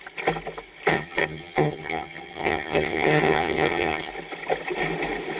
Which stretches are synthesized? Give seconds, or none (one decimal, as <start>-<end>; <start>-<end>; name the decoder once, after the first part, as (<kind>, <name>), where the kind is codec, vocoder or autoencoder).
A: 0.9-4.1 (vocoder, HiFi-GAN)